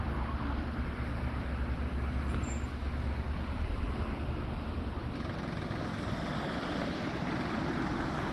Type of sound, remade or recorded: remade